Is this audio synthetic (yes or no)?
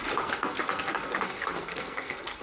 yes